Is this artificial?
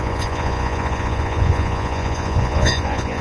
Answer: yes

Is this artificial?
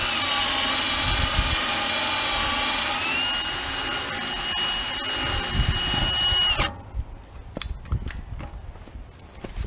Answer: no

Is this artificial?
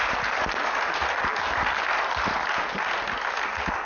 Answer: no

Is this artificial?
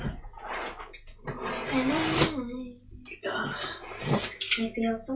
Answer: no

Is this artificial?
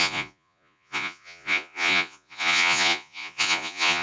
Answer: yes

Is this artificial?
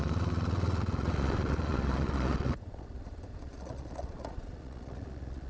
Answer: yes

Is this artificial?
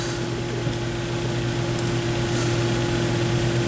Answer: no